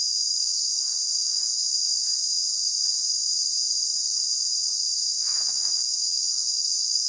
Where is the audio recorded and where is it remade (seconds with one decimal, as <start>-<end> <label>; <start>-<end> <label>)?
0.0-1.5 remade; 1.5-5.2 recorded; 5.2-7.1 remade